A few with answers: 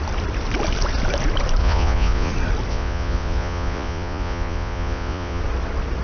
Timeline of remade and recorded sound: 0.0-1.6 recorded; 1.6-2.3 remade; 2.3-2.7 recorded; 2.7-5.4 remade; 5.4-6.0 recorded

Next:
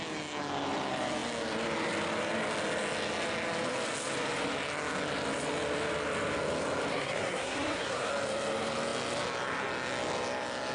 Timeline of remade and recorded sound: 0.0-6.9 recorded; 6.9-8.1 remade; 8.1-10.7 recorded

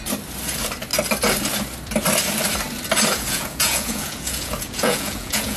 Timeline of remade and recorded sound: 0.0-3.1 recorded; 3.1-5.6 remade

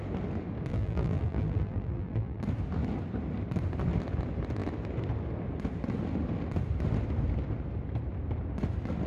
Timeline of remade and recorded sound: 0.0-0.7 recorded; 0.7-2.4 remade; 2.4-9.1 recorded